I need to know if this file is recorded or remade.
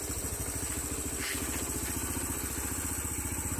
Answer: recorded